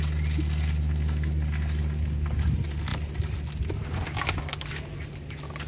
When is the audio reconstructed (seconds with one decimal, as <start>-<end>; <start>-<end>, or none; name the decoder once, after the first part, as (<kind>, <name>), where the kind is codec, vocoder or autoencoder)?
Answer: none